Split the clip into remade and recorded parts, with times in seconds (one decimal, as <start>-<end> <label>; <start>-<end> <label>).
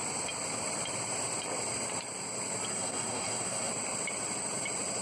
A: 0.0-2.7 recorded; 2.7-3.7 remade; 3.7-5.0 recorded